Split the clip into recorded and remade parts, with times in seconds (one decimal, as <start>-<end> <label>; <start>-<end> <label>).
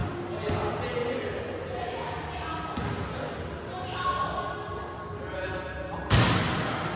0.0-7.0 recorded